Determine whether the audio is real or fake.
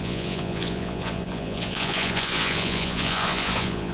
fake